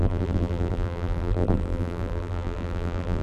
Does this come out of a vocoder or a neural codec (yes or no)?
yes